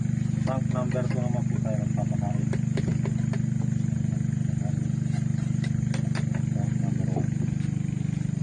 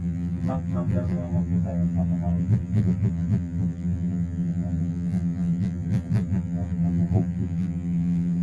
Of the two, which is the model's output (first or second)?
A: second